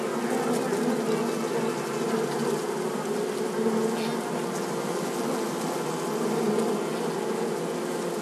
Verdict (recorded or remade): recorded